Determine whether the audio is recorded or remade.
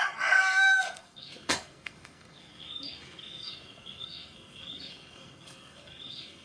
remade